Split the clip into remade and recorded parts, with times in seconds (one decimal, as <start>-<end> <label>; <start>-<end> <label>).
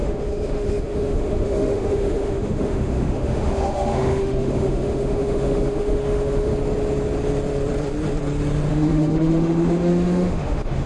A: 0.0-6.5 remade; 6.5-8.7 recorded; 8.7-10.9 remade